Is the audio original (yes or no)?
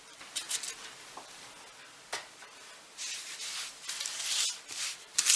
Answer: yes